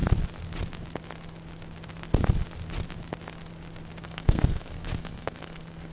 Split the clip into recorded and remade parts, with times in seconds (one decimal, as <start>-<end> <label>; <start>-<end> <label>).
0.0-4.0 recorded; 4.0-5.9 remade